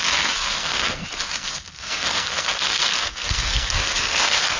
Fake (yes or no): yes